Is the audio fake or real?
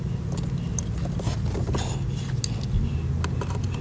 real